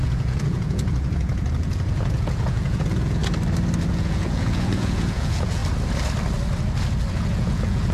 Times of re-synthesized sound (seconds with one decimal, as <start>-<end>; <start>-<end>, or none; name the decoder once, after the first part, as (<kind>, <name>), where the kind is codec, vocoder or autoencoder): 0.0-3.2 (vocoder, Vocos); 3.9-5.6; 7.1-7.9

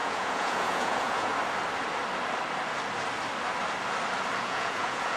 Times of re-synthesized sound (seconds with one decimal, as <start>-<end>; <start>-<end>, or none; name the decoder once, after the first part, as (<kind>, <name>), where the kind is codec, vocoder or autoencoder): 0.0-1.3 (vocoder, Vocos); 4.4-5.2

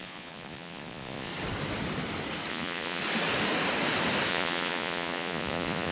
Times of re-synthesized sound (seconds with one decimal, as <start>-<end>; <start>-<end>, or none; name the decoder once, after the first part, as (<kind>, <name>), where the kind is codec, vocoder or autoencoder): 0.0-1.3 (vocoder, Vocos); 2.5-3.0; 4.3-5.9